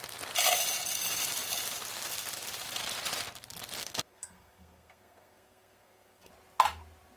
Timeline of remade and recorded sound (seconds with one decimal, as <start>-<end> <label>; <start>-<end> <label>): 0.0-3.8 recorded; 3.8-6.3 remade; 6.3-7.2 recorded